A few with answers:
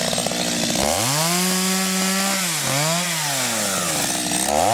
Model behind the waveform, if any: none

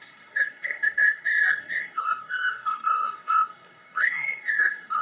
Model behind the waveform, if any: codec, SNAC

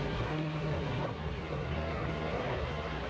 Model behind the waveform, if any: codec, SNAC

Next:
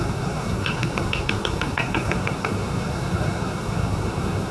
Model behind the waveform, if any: codec, SNAC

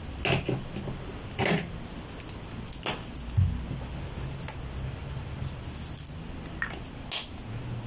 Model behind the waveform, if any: none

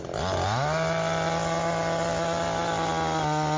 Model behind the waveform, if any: none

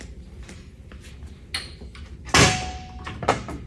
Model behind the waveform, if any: none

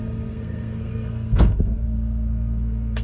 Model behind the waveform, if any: codec, SNAC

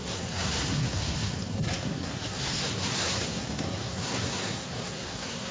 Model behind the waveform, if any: codec, SNAC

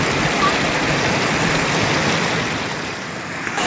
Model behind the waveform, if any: none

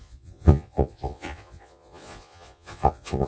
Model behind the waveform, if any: vocoder, Vocos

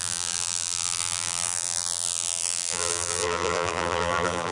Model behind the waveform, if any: vocoder, BigVGAN v2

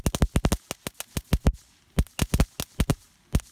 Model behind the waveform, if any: none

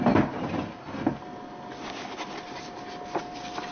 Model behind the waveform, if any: none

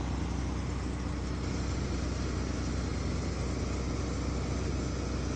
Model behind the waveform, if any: none